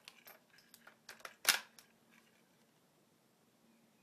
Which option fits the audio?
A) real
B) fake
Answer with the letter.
A